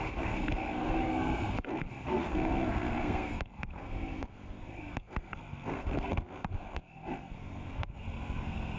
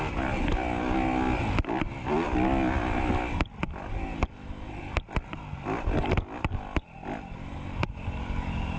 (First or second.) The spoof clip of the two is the first